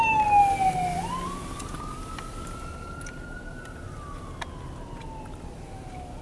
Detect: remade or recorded recorded